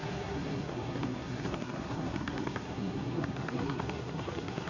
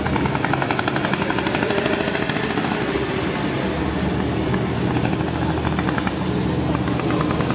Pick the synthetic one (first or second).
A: first